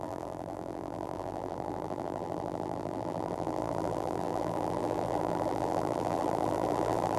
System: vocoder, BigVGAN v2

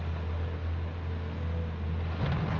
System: none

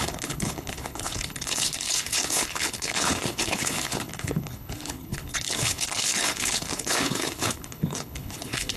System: codec, HILCodec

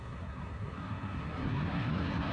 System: codec, SNAC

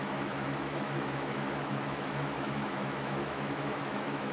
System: autoencoder, DAC-VAE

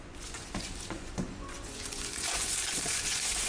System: vocoder, Vocos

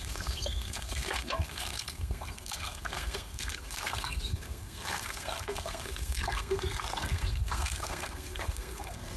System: codec, SNAC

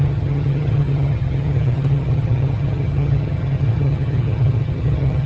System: vocoder, HiFi-GAN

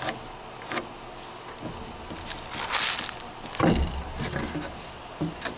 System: none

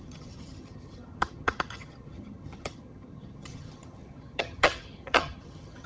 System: vocoder, HiFi-GAN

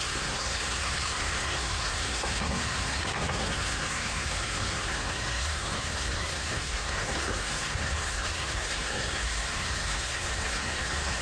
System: codec, SNAC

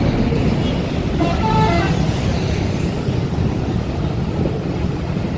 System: none